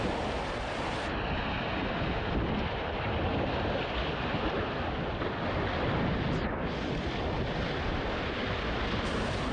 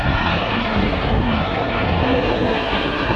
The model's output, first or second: second